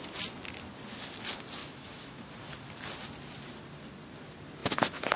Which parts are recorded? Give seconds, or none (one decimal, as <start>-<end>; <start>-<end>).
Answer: 0.0-1.6; 2.3-5.2